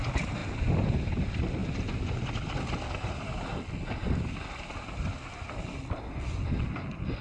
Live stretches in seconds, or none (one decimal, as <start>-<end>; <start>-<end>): 0.0-7.2